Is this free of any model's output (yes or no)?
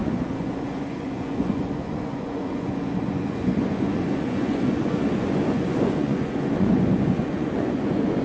no